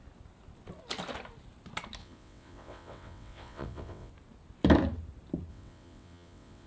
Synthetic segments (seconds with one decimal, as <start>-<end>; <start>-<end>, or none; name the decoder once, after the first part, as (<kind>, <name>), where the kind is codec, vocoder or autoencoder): 2.0-4.1 (vocoder, WaveNeXt); 5.5-6.7